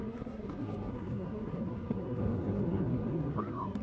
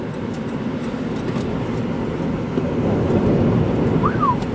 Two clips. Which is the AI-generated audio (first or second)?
first